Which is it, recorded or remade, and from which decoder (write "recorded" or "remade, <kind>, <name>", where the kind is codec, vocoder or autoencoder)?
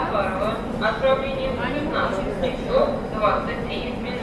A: recorded